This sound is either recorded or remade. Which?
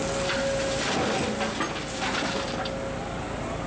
recorded